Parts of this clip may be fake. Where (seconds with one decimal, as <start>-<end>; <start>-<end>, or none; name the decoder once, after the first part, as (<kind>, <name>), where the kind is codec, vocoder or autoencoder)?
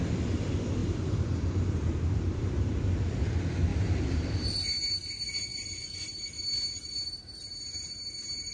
0.8-1.6 (vocoder, BigVGAN v2); 3.7-4.6